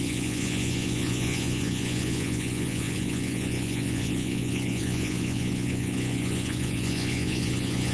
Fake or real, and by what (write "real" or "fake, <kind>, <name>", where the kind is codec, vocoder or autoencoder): fake, vocoder, Vocos